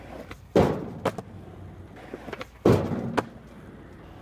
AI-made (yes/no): no